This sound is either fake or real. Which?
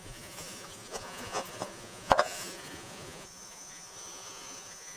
fake